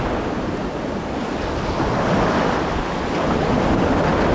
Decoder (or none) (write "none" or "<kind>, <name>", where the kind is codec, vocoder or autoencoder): none